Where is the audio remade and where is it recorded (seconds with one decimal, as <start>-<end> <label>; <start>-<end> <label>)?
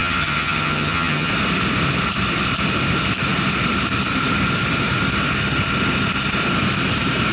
0.0-1.3 remade; 1.3-7.3 recorded